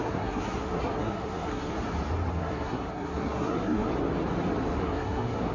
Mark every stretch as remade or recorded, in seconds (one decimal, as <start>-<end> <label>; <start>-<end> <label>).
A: 0.0-1.7 remade; 1.7-2.3 recorded; 2.3-3.9 remade; 3.9-4.8 recorded; 4.8-5.5 remade